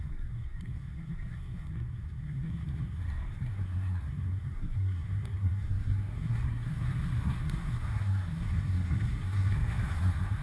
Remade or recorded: remade